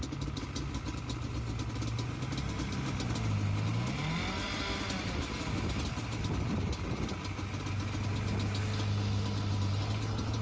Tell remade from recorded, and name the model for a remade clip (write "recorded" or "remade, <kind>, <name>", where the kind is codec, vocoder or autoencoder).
recorded